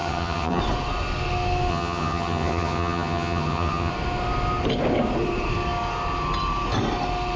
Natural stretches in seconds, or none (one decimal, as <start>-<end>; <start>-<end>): 0.6-1.7; 3.9-7.4